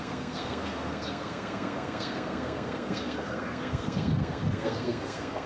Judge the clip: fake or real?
fake